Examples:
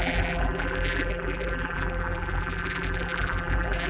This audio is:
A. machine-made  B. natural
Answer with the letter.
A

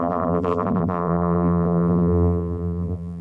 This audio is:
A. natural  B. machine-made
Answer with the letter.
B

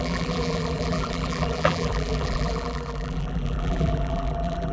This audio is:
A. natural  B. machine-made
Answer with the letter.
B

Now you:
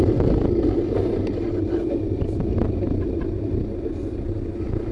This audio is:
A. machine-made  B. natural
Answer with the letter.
B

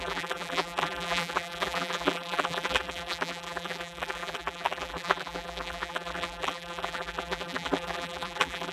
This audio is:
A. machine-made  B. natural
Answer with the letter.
A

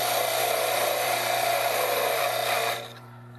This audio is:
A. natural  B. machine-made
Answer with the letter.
B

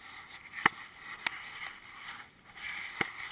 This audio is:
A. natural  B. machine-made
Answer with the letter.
A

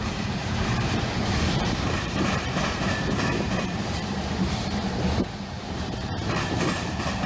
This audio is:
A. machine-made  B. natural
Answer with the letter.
A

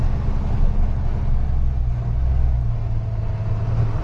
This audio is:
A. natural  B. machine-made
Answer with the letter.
A